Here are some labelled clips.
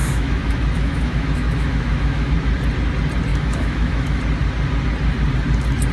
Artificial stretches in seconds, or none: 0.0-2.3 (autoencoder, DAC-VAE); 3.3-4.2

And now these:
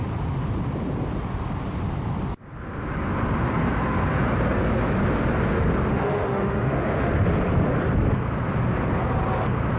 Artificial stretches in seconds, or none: 5.9-7.1 (autoencoder, DAC-VAE)

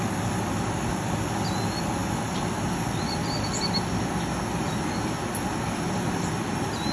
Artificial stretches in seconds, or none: none

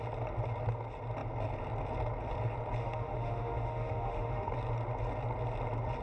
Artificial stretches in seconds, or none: 2.8-4.5 (autoencoder, DAC-VAE)

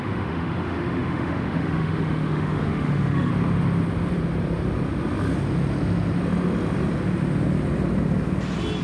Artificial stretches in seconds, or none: 0.0-3.3 (autoencoder, DAC-VAE)

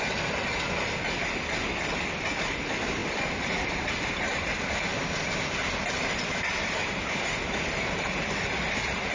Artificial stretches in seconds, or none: none

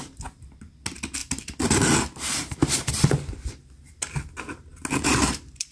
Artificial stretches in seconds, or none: none

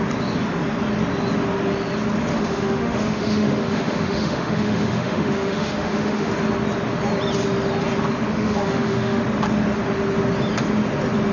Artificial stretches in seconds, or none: 2.3-6.3 (autoencoder, DAC-VAE); 8.3-9.2